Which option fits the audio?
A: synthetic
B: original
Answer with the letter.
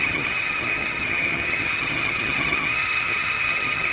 A